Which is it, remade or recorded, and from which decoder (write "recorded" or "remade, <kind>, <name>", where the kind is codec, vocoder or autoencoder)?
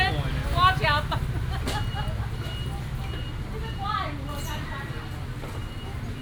recorded